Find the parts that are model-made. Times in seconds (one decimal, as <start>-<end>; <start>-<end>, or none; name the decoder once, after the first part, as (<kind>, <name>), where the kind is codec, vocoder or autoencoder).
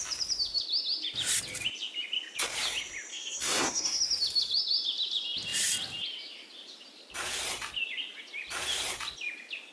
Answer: 3.1-4.0 (codec, SNAC)